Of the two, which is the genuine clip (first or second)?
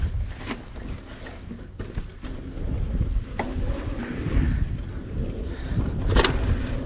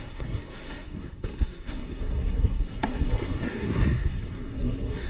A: first